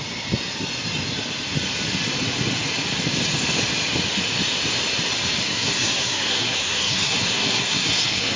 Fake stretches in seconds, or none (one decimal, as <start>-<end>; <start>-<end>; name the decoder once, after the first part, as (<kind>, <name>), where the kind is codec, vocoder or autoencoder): 5.4-8.4 (codec, SNAC)